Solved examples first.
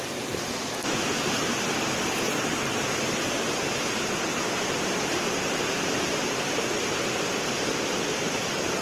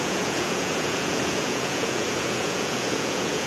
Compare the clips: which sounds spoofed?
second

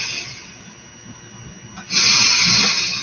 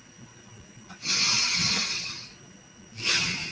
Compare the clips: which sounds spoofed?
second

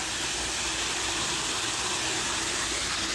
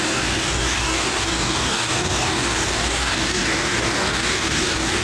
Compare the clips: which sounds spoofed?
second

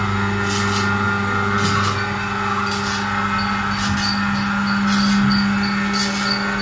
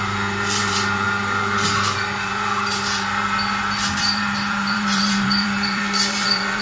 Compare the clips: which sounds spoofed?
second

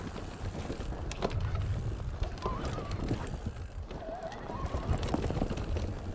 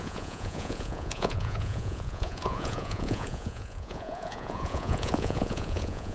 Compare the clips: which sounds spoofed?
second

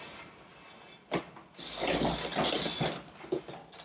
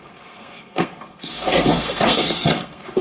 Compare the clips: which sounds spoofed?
second